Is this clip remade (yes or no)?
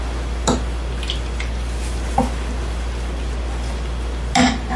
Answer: no